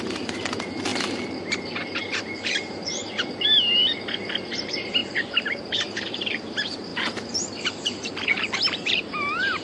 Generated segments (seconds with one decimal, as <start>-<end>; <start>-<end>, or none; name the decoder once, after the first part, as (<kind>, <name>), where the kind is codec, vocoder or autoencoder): 0.0-3.0 (vocoder, BigVGAN v2); 4.6-9.6